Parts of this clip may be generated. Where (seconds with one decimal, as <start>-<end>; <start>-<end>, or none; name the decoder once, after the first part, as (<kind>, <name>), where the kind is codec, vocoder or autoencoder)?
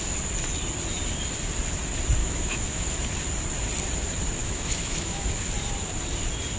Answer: 2.2-2.9 (autoencoder, DAC-VAE); 4.4-5.5